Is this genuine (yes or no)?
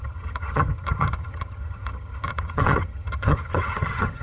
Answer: no